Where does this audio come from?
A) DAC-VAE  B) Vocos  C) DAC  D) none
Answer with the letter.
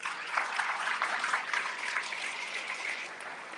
B